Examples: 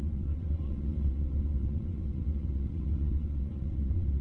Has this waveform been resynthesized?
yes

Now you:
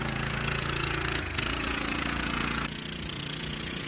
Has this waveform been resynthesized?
yes